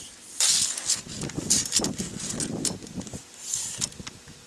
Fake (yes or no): no